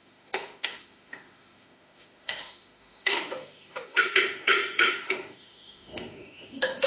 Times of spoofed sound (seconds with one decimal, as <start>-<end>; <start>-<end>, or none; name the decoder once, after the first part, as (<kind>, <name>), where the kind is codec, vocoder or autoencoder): 0.0-6.9 (autoencoder, DAC-VAE)